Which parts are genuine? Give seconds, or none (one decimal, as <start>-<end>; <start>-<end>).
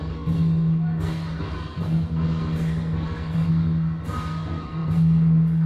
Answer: none